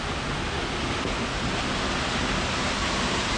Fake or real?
real